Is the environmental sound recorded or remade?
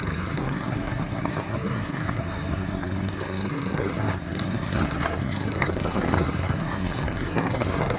remade